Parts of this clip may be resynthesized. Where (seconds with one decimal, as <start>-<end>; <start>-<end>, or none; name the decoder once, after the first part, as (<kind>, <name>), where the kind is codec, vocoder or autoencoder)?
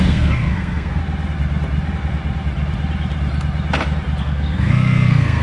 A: 0.0-1.0 (codec, SNAC); 4.2-5.4